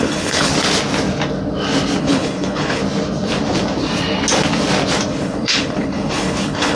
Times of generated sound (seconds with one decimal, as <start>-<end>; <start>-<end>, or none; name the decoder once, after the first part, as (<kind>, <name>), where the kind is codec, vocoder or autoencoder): 0.0-0.5 (codec, HILCodec); 2.0-2.8; 5.1-6.8